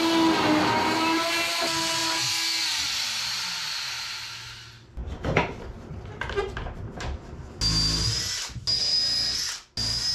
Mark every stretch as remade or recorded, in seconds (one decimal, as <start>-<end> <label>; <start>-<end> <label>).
0.0-10.1 recorded